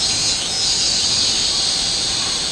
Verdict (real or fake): real